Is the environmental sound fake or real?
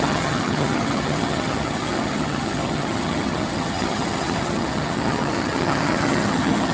fake